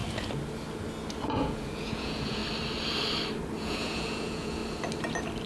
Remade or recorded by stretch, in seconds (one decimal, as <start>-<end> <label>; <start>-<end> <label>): 0.0-1.2 recorded; 1.2-2.4 remade; 2.4-3.6 recorded; 3.6-4.6 remade; 4.6-5.5 recorded